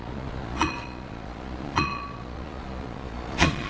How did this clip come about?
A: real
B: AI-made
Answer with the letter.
B